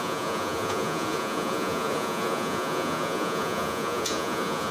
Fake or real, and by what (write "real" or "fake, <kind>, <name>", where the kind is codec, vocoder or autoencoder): fake, vocoder, Vocos